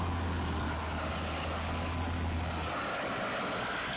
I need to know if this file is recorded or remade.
recorded